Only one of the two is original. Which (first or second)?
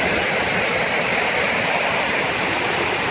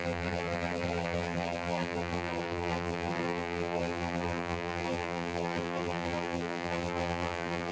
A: first